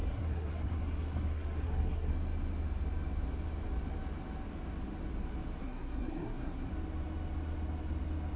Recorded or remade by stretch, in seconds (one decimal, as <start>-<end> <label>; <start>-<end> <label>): 0.0-2.1 remade; 2.1-5.6 recorded; 5.6-6.7 remade; 6.7-8.4 recorded